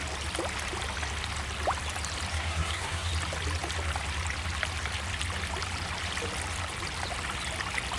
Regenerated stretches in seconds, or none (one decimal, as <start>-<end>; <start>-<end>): 2.3-3.1